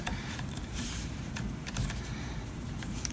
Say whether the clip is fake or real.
fake